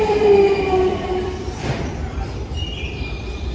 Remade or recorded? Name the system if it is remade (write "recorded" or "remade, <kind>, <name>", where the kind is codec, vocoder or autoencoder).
remade, vocoder, BigVGAN v2